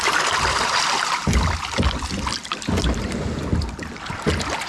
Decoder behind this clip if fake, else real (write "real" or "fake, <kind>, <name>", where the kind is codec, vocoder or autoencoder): real